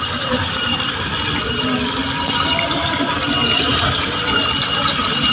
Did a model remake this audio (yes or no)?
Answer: yes